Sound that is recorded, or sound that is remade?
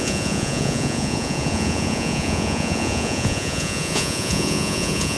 remade